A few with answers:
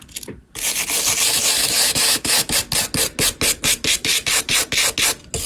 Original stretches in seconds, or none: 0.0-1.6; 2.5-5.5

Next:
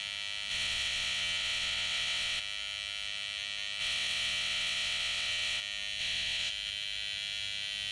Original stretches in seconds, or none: 0.0-0.5; 2.4-3.8; 5.6-6.0; 6.5-7.9